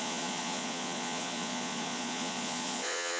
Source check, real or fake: fake